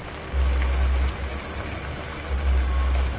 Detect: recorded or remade recorded